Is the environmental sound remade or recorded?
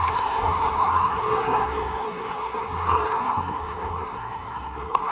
remade